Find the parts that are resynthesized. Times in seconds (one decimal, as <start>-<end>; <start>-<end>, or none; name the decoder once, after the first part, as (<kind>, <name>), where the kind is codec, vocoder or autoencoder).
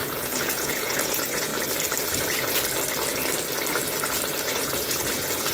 0.0-1.5 (vocoder, Vocos); 4.4-5.5